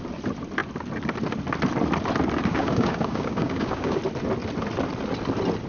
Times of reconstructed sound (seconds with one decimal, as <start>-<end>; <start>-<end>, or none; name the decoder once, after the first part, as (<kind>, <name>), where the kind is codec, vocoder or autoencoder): 2.5-4.0 (codec, DAC)